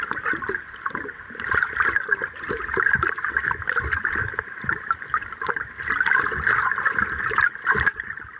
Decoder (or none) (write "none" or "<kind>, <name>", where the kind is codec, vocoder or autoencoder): none